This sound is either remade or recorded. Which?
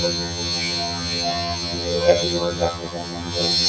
remade